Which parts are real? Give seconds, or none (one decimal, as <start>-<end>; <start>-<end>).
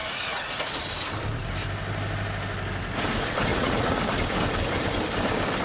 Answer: 0.9-3.5; 4.0-5.6